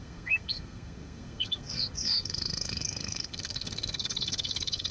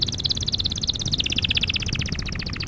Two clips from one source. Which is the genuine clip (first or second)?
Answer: second